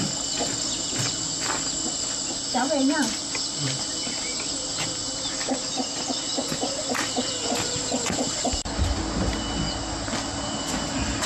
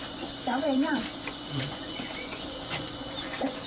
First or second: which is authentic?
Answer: first